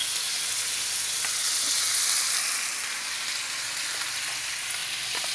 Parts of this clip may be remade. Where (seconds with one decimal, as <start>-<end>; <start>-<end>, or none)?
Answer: 4.8-5.3